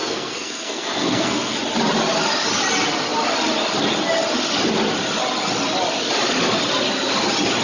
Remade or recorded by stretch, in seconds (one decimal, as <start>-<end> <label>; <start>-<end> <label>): 0.0-1.6 remade; 1.6-7.6 recorded